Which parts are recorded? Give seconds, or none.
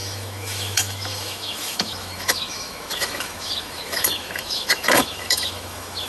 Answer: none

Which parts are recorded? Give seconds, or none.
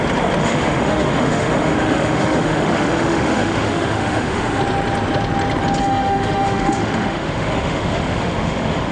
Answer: 0.0-0.4; 4.6-5.8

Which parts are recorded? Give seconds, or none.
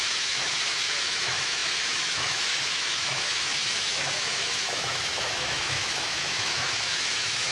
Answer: none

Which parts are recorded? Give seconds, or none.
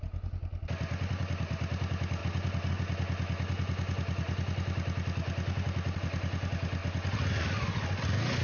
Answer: 0.0-8.4